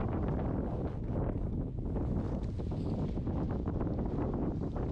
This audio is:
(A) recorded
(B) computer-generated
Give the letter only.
A